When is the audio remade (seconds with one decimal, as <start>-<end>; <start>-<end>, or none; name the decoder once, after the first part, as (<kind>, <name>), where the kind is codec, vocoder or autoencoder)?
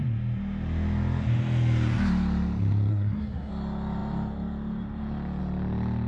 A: 2.9-3.5 (codec, SNAC)